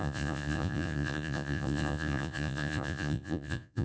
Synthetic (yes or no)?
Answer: yes